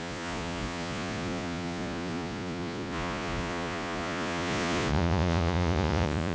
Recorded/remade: remade